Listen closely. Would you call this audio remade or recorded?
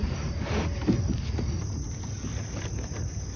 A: recorded